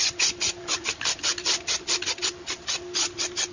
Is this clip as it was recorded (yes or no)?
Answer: yes